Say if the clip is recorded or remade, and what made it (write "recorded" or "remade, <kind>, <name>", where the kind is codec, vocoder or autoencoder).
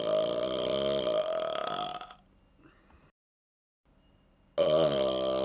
recorded